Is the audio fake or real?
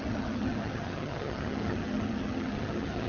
fake